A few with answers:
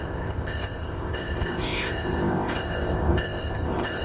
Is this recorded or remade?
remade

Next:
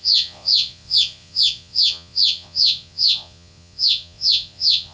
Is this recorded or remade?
remade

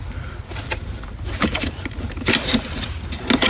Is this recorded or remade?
recorded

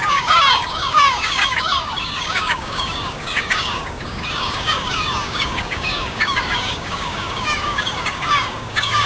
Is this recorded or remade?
remade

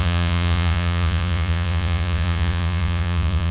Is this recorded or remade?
remade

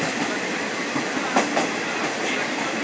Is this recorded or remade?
recorded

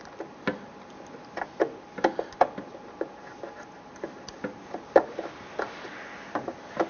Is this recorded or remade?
recorded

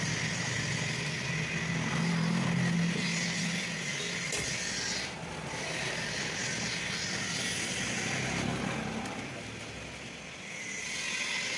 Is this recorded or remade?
recorded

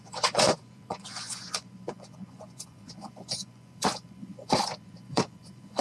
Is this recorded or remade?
remade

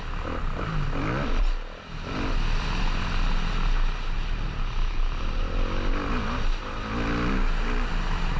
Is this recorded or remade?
recorded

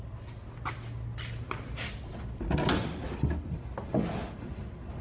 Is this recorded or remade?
recorded